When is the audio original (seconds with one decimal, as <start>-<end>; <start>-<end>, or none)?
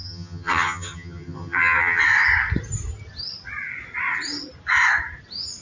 2.0-5.6